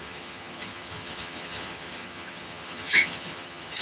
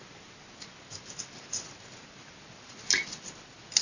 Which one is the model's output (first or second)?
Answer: first